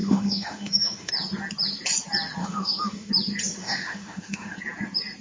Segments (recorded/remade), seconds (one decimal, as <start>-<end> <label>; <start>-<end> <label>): 0.0-1.1 remade; 1.1-2.4 recorded; 2.4-3.1 remade; 3.1-3.6 recorded; 3.6-4.6 remade; 4.6-5.2 recorded